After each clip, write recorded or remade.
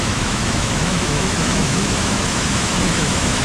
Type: remade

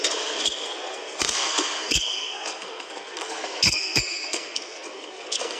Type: remade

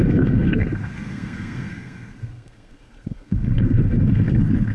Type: remade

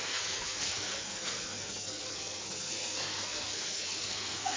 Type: remade